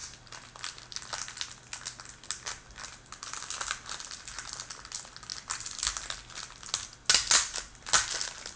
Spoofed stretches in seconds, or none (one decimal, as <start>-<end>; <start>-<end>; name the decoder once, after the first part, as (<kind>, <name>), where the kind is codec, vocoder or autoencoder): none